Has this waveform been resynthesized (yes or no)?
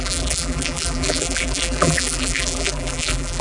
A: yes